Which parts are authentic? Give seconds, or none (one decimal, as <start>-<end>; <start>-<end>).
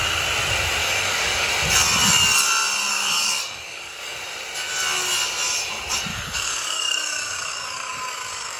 0.0-0.8; 1.5-2.9; 4.2-6.1